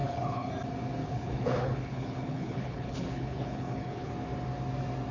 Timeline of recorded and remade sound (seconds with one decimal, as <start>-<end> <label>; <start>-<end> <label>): 0.0-0.5 remade; 0.5-1.0 recorded; 1.0-4.1 remade; 4.1-5.1 recorded